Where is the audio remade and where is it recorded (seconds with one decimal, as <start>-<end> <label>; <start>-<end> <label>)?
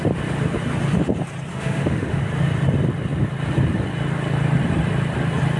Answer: 0.0-1.5 recorded; 1.5-2.2 remade; 2.2-5.6 recorded